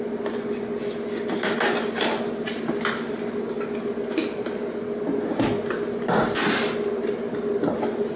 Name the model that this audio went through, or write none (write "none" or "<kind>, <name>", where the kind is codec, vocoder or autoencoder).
none